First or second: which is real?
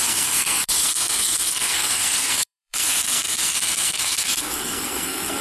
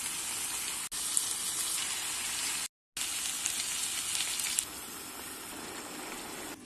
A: second